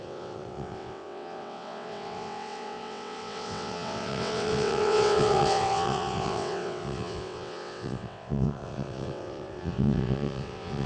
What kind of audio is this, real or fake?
fake